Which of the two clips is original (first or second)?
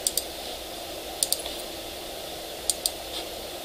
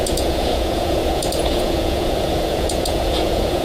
first